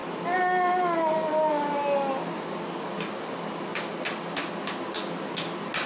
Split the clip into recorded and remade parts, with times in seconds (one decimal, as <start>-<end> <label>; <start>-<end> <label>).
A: 0.0-5.9 recorded